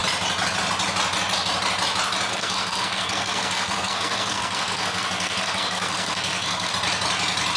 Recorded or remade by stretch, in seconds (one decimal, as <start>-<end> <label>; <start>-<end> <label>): 0.0-2.3 recorded; 2.3-6.7 remade; 6.7-7.6 recorded